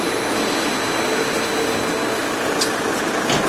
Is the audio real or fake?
real